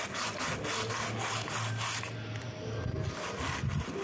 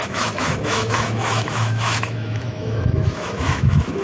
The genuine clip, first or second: first